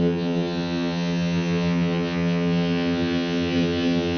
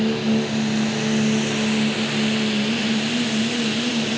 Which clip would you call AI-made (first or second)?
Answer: first